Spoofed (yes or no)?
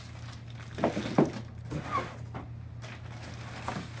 no